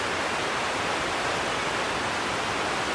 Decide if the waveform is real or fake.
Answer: real